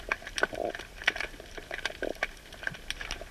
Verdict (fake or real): real